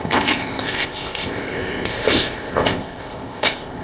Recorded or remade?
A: remade